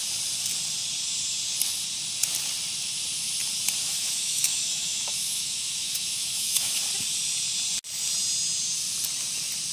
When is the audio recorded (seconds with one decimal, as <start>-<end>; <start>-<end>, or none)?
0.0-3.8; 6.8-9.7